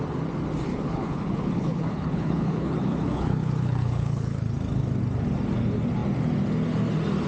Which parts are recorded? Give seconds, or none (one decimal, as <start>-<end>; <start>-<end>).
0.0-0.7; 4.4-7.3